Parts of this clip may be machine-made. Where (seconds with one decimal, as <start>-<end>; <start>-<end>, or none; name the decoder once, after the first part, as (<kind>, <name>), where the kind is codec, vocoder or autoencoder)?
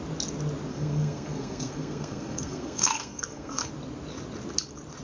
0.7-3.7 (codec, SNAC)